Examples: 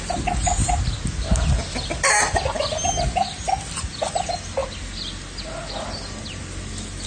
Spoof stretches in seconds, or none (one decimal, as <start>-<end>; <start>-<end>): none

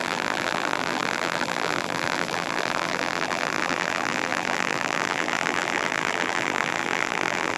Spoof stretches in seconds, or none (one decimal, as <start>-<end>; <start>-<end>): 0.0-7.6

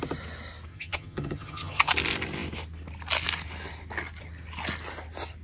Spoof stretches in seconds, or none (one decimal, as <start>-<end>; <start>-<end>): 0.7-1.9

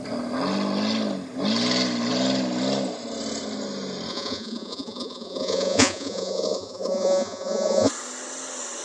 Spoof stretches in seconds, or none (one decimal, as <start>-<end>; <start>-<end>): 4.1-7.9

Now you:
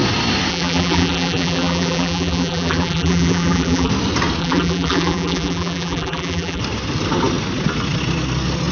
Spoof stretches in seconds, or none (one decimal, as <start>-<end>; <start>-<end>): 0.5-3.9; 4.4-6.6